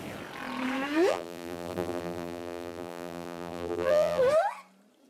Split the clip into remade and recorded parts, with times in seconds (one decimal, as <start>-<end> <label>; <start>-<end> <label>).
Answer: 0.0-1.1 recorded; 1.1-4.2 remade; 4.2-5.1 recorded